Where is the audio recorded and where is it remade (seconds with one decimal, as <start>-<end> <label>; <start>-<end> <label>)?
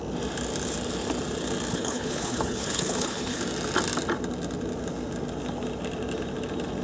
0.0-1.7 recorded; 1.7-3.4 remade; 3.4-6.8 recorded